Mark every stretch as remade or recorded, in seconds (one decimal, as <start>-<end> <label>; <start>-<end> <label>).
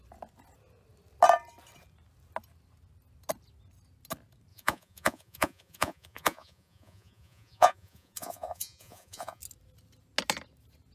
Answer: 0.0-4.5 recorded; 4.5-9.4 remade; 9.4-10.9 recorded